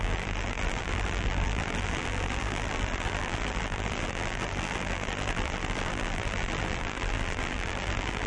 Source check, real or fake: fake